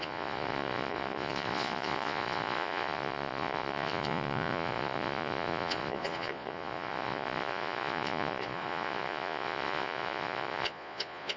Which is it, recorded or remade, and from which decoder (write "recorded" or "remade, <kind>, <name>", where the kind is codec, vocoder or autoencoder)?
remade, vocoder, Vocos